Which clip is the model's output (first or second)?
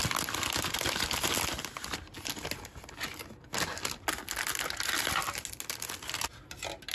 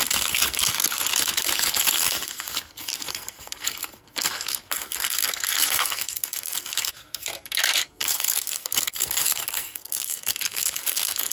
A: second